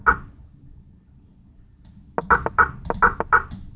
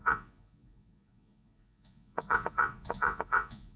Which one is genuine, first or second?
first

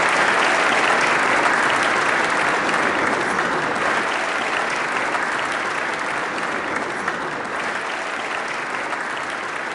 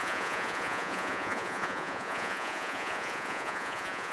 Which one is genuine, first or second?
first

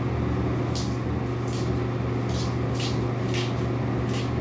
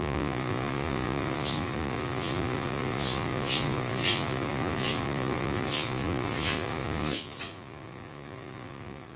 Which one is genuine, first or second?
first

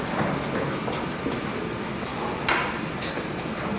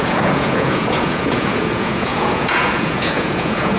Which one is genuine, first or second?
first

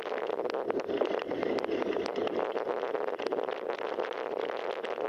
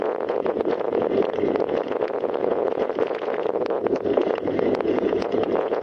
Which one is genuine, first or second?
first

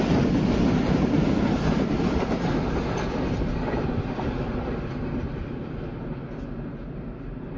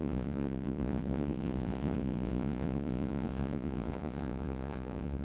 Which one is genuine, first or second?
first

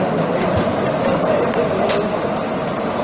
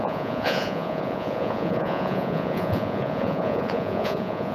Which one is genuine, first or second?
first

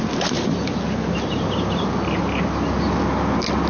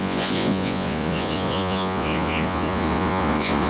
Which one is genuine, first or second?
first